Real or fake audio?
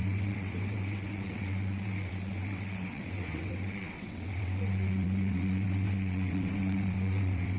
fake